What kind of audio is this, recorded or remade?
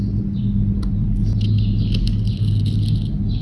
recorded